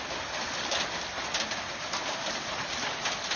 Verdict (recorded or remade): recorded